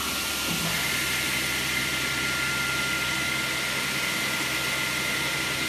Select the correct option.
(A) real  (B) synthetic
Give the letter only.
A